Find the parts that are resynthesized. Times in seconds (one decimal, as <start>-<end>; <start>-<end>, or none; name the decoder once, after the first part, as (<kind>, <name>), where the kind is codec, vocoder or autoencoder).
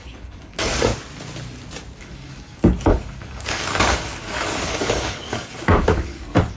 0.0-0.9 (codec, DAC); 2.0-6.6